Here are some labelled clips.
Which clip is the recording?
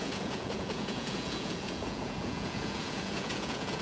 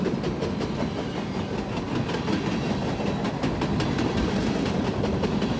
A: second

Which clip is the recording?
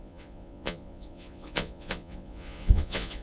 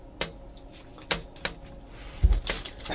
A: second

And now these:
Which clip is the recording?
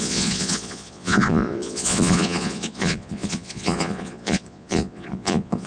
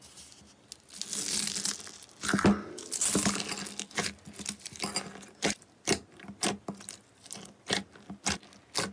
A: second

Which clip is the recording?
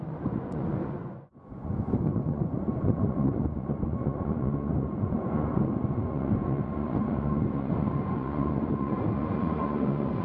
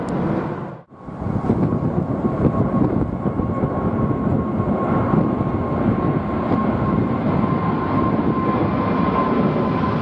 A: second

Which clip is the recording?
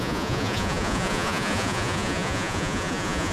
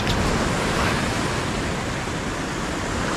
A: second